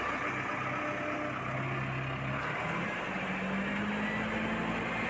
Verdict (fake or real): real